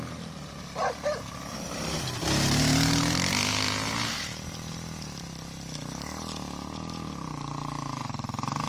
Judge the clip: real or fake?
real